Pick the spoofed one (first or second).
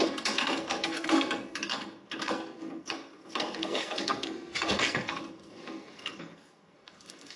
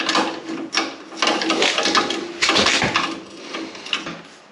first